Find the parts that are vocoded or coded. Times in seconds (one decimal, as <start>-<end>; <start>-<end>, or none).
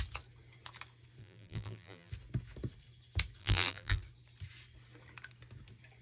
1.2-2.1; 3.4-4.0